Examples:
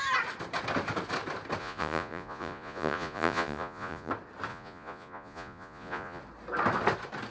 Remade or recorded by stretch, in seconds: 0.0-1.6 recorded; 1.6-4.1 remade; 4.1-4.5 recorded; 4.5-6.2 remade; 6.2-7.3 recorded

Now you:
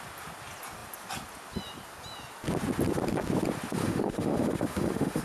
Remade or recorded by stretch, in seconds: 0.0-3.8 recorded; 3.8-5.2 remade

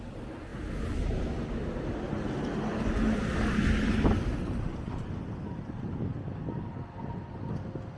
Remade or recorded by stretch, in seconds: 0.0-8.0 recorded